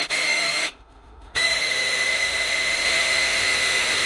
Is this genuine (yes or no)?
no